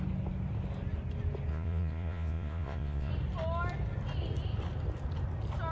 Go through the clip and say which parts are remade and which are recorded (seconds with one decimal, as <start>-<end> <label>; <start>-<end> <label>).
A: 0.0-1.5 recorded; 1.5-3.1 remade; 3.1-5.7 recorded